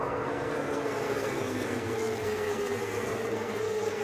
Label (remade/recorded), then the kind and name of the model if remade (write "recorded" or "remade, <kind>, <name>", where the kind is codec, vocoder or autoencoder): remade, codec, SNAC